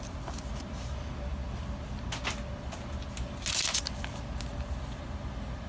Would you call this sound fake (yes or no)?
no